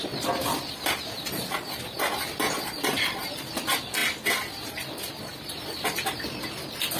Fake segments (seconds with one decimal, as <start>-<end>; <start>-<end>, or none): none